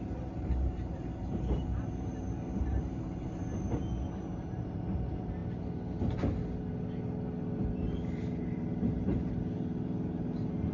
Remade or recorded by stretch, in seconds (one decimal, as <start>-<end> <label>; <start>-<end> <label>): 0.0-5.4 remade; 5.4-7.7 recorded; 7.7-10.7 remade